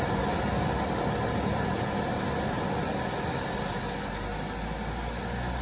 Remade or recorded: recorded